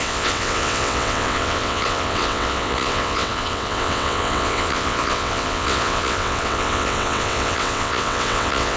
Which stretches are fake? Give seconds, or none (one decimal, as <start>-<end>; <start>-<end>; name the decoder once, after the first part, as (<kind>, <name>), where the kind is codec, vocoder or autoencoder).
0.0-8.8 (vocoder, WaveNeXt)